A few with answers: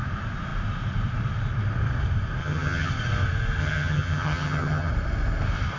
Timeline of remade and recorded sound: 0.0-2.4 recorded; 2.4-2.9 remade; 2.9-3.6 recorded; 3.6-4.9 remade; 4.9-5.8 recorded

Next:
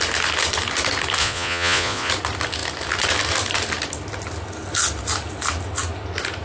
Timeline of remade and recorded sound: 0.0-1.2 recorded; 1.2-2.1 remade; 2.1-6.4 recorded